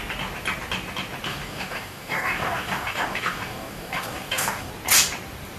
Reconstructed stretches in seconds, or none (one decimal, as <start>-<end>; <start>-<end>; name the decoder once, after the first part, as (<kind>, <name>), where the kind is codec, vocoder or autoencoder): 1.3-4.7 (codec, DAC)